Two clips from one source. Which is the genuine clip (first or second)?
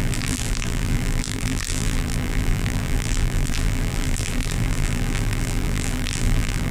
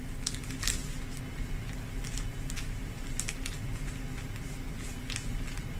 second